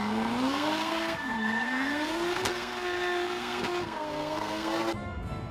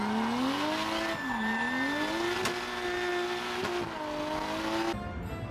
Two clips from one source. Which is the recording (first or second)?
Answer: second